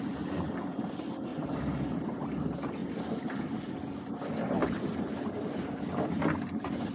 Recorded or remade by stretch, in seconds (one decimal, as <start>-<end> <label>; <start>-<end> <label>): 0.0-1.3 recorded; 1.3-1.8 remade; 1.8-4.6 recorded; 4.6-5.5 remade; 5.5-6.9 recorded